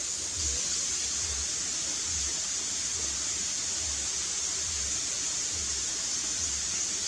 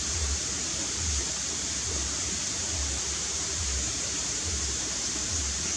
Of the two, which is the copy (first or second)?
second